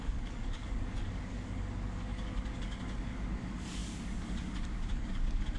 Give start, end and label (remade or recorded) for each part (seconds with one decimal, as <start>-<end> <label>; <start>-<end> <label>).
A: 0.0-5.6 remade